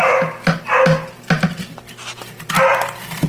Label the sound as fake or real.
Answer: real